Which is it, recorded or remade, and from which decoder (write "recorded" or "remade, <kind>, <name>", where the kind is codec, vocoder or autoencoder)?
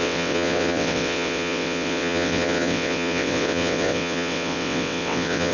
remade, vocoder, WaveNeXt